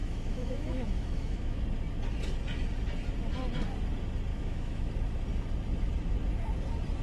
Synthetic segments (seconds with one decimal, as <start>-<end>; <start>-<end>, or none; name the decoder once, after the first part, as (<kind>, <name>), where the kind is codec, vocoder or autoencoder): 0.0-1.6 (autoencoder, DAC-VAE); 4.3-4.9